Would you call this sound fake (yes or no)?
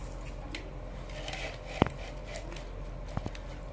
no